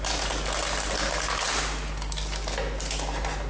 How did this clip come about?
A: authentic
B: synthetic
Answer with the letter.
A